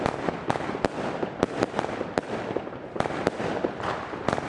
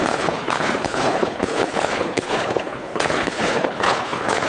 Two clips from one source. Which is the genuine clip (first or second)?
first